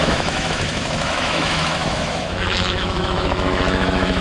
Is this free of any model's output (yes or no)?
no